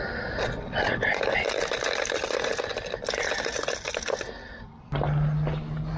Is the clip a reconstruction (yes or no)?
no